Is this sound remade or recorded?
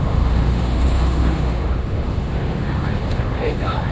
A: remade